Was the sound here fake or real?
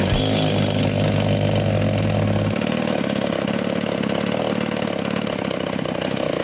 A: real